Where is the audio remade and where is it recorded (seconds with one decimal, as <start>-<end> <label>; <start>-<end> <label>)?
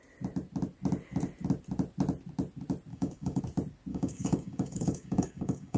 0.0-2.9 recorded; 2.9-3.4 remade; 3.4-3.9 recorded; 3.9-5.8 remade